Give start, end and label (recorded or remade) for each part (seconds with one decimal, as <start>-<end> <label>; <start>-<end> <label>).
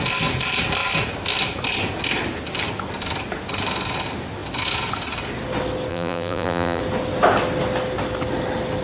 0.0-5.9 recorded; 5.9-6.8 remade; 6.8-8.8 recorded